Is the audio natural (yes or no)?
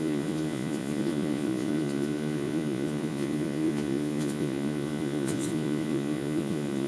no